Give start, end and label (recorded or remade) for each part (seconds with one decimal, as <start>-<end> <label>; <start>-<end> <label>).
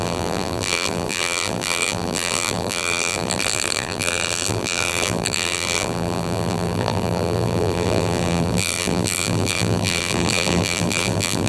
0.0-11.5 remade